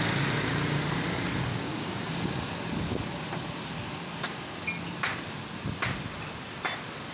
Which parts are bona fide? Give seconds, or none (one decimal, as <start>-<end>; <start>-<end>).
0.0-1.5; 2.1-7.1